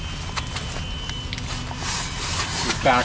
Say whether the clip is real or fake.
real